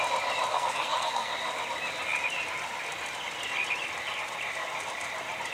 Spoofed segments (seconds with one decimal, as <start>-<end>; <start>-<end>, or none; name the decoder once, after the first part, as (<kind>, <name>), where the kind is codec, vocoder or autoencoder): 0.5-1.3 (codec, SNAC)